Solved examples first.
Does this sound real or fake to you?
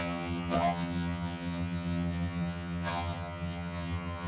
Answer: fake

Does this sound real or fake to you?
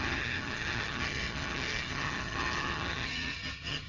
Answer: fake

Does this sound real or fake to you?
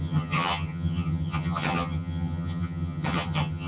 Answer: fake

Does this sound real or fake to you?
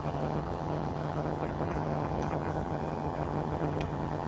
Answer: fake